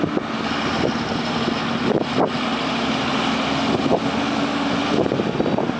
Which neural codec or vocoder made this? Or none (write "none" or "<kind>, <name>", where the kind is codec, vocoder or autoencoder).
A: none